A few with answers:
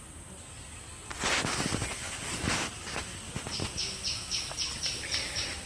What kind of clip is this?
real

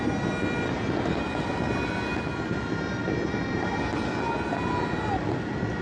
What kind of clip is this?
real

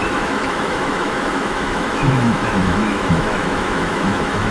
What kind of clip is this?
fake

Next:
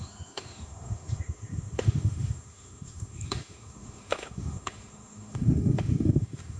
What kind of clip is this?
fake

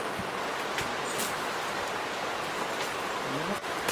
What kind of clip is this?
real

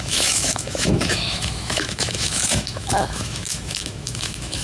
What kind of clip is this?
fake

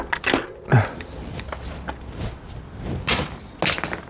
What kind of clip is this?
real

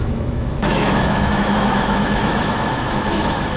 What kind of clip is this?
fake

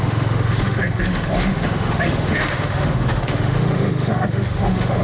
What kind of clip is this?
fake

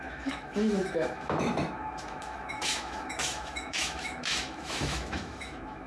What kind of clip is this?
fake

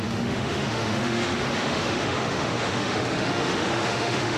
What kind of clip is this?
fake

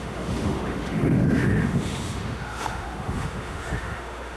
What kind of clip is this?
fake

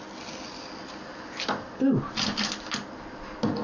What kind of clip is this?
real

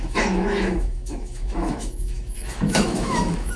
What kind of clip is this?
fake